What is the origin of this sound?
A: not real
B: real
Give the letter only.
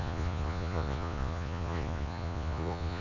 A